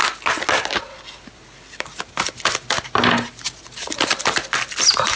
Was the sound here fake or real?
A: real